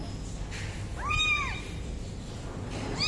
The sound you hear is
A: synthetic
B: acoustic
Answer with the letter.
B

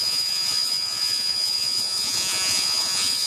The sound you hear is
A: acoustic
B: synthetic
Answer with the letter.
B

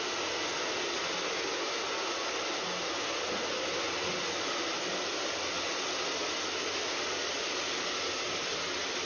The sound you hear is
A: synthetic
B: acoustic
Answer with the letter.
B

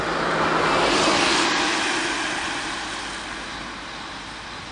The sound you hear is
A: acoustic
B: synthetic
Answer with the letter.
A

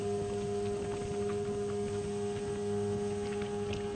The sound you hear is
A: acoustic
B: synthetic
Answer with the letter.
A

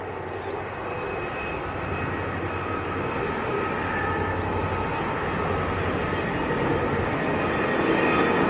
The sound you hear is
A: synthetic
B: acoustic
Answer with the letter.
B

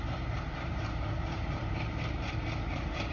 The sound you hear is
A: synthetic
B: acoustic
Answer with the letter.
A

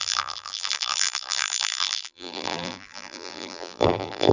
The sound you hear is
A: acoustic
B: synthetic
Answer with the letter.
B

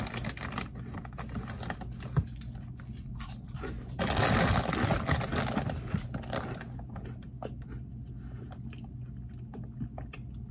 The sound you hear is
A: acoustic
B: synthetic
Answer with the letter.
A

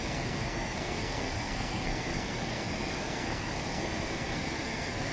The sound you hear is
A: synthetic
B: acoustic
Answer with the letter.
A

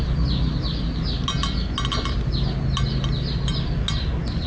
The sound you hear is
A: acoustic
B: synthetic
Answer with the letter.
A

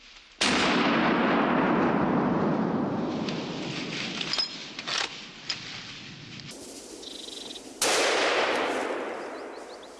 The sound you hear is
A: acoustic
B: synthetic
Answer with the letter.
A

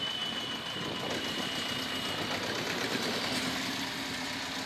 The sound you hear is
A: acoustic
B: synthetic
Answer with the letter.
A